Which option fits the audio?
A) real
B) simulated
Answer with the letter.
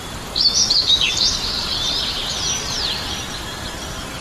B